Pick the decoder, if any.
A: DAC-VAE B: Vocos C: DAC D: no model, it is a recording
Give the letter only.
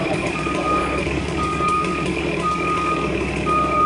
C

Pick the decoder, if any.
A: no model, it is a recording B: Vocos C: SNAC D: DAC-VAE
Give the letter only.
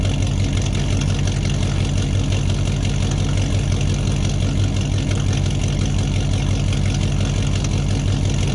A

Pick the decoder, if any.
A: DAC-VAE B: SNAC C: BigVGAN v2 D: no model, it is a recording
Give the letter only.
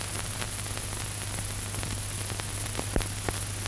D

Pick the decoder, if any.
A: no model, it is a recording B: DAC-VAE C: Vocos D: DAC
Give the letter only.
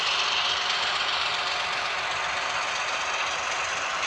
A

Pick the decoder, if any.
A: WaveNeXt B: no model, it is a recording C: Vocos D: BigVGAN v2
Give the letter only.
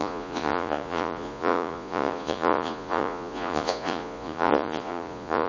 C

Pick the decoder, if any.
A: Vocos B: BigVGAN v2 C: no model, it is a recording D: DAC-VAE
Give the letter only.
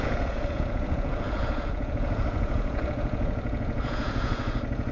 A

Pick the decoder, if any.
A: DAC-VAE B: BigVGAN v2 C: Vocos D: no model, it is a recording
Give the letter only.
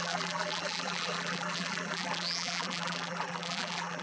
B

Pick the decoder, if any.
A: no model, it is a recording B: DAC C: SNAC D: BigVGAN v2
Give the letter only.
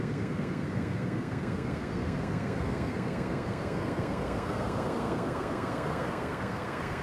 C